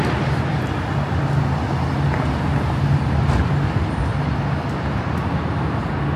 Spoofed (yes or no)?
no